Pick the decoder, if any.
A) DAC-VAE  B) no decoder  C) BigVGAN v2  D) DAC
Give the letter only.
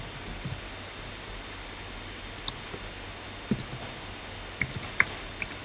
B